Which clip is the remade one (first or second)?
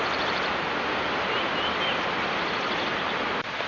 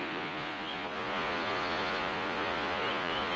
second